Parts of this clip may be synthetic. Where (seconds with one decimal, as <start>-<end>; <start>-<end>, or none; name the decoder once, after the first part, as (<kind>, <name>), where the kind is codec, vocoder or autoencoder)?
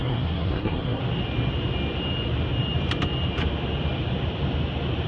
0.0-1.0 (codec, SNAC)